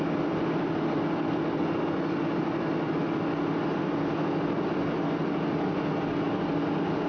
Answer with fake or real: real